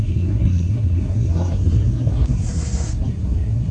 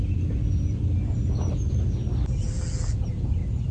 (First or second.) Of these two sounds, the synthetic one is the first